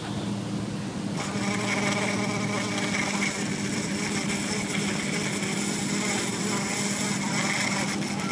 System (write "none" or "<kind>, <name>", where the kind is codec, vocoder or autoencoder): none